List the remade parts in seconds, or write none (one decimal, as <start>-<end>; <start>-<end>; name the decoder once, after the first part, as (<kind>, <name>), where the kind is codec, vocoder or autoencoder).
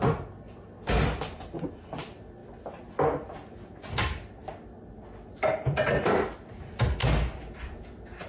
none